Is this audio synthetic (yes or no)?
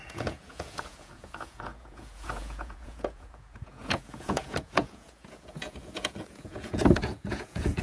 yes